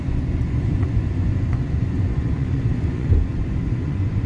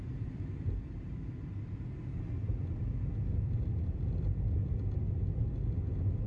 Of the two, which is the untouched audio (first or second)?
second